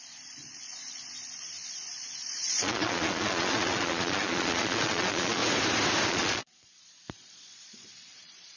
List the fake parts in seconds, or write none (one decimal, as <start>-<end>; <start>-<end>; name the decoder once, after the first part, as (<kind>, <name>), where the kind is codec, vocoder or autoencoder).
0.0-5.4 (vocoder, Vocos); 6.1-8.6